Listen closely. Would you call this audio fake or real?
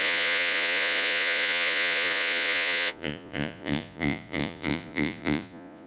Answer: fake